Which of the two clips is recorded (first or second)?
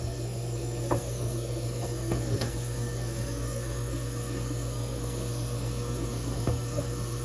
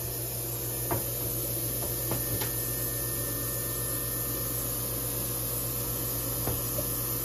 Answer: second